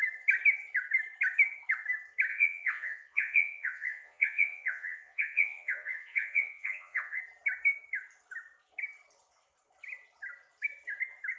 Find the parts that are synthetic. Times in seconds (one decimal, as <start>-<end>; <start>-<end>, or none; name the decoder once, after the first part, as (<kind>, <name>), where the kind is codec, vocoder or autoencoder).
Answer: 2.3-7.2 (vocoder, Vocos)